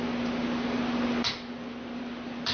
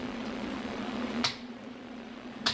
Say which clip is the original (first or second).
first